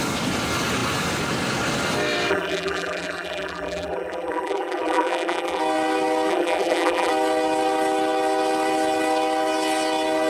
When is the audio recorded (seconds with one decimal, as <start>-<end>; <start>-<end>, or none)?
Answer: 0.0-2.3; 5.6-6.3; 7.1-10.3